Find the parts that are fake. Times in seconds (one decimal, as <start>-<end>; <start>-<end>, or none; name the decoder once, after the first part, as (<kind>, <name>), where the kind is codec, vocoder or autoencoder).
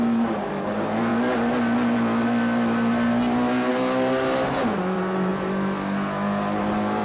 0.0-1.1 (vocoder, BigVGAN v2); 3.7-5.3; 6.6-7.0